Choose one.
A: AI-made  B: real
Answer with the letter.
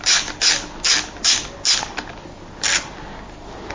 B